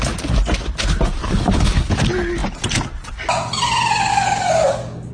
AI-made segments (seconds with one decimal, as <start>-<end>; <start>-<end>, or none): 1.2-2.0; 4.1-5.1